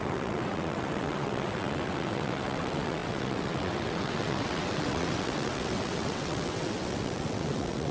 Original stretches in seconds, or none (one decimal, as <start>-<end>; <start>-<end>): none